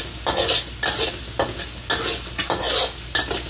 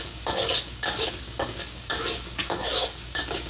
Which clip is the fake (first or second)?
second